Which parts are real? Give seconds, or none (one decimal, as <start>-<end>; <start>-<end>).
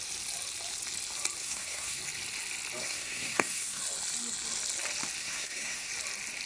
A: 0.0-1.4; 2.0-2.8; 3.8-5.2; 5.9-6.5